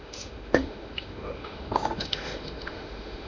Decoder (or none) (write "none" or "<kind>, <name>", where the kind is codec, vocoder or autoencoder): autoencoder, DAC-VAE